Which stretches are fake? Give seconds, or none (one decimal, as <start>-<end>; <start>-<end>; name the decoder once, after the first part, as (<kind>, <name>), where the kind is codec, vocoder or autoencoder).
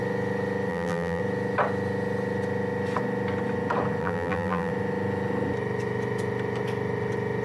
0.7-1.2 (vocoder, BigVGAN v2); 4.0-4.7